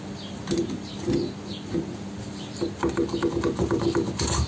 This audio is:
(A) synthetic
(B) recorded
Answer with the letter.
B